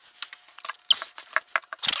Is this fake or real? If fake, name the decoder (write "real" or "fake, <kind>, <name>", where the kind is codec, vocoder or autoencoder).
real